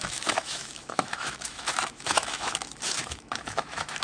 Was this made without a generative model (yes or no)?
no